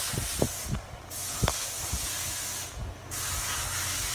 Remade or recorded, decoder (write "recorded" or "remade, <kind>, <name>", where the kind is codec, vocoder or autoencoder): recorded